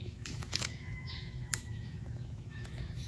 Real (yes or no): no